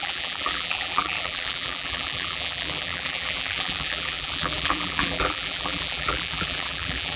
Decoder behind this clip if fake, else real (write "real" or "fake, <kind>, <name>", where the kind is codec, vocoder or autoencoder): fake, vocoder, BigVGAN v2